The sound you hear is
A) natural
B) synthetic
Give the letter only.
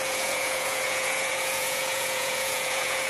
B